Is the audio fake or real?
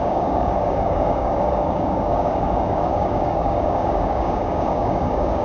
fake